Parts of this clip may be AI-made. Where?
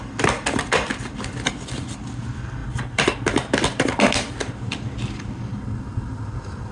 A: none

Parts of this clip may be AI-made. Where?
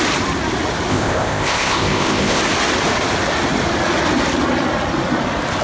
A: 0.9-2.4 (codec, ZipCodec)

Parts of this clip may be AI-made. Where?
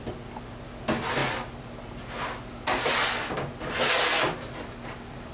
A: none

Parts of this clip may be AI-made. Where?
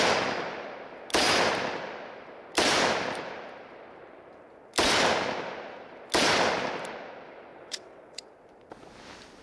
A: 7.5-8.3 (vocoder, WaveNeXt)